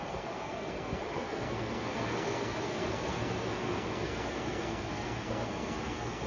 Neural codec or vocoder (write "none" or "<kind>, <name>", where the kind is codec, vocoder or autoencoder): codec, SNAC